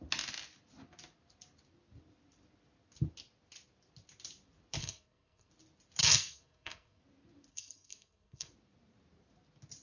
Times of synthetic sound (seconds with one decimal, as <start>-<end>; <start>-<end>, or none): 4.8-5.5; 6.0-7.0; 7.5-8.5